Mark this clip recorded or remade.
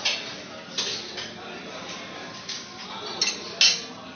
recorded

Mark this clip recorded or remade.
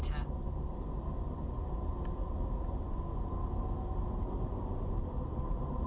recorded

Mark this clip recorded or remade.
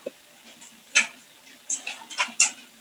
recorded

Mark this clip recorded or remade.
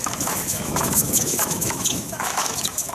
remade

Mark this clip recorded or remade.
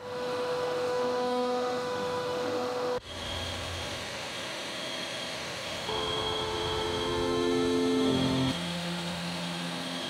remade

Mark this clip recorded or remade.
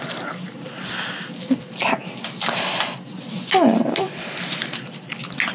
recorded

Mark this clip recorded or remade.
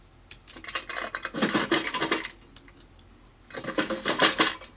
recorded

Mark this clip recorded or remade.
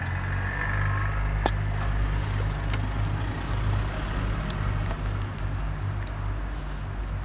recorded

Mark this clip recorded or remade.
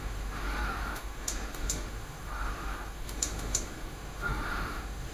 remade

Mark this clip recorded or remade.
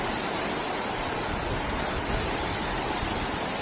recorded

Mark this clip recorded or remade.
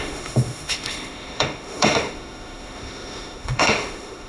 remade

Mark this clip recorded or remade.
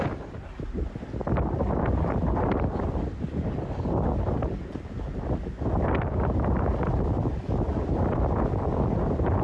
recorded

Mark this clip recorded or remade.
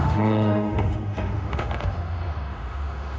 remade